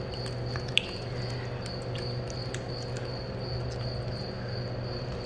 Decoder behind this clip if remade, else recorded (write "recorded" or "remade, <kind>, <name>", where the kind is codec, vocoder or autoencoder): recorded